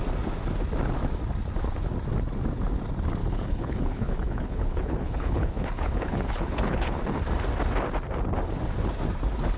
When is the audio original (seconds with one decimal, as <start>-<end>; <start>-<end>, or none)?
0.0-3.2; 7.0-9.6